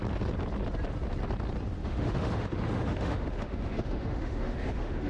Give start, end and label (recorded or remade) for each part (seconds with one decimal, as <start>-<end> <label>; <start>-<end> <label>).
0.0-1.8 recorded; 1.8-5.1 remade